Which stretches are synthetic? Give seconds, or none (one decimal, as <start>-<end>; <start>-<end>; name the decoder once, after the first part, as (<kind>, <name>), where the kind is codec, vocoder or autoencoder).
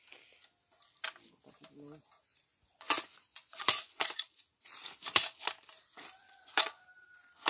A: 2.5-4.2 (vocoder, Vocos); 6.2-6.8